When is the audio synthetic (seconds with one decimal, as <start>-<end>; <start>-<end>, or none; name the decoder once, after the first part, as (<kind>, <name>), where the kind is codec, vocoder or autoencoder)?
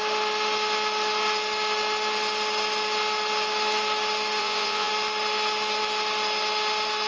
4.4-4.9 (vocoder, Vocos)